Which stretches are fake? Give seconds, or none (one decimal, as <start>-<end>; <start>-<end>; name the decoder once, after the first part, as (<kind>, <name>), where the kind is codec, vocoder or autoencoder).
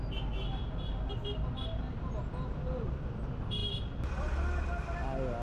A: none